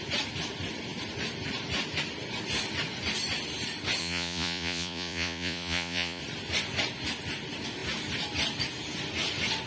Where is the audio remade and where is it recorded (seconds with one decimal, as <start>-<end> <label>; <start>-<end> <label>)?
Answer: 0.0-4.0 recorded; 4.0-6.2 remade; 6.2-9.7 recorded